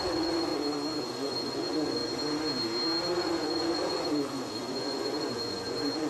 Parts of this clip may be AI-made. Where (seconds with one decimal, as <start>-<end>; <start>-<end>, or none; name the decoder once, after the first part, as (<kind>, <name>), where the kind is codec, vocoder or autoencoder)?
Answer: 0.0-0.5 (vocoder, Vocos); 1.0-2.0; 3.2-6.1